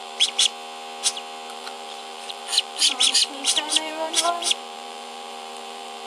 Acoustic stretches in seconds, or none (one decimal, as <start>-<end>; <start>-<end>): 0.5-1.5

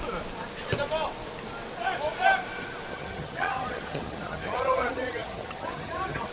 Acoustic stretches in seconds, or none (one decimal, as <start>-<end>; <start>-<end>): 0.0-2.9

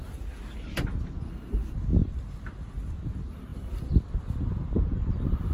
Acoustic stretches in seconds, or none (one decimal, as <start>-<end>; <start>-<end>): 0.0-1.9; 2.9-3.5; 5.0-5.5

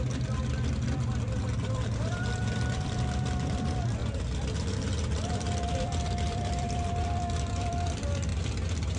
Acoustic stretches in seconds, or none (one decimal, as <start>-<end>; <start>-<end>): 4.0-4.8; 8.3-9.0

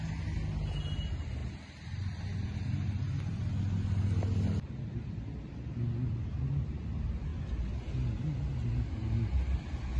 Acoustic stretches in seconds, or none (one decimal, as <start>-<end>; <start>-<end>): 0.0-10.0